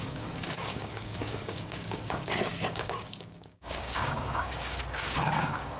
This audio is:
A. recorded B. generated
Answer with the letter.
B